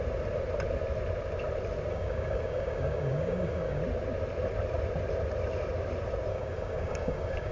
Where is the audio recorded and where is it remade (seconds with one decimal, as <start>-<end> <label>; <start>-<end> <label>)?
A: 0.0-1.9 recorded; 1.9-3.8 remade; 3.8-6.3 recorded; 6.3-7.5 remade